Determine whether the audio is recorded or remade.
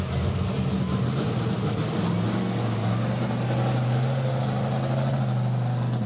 recorded